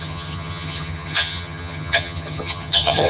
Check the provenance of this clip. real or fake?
fake